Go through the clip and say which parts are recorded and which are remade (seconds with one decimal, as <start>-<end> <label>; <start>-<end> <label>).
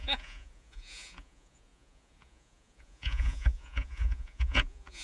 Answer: 0.0-5.0 remade